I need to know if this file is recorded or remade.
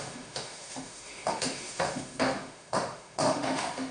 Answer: remade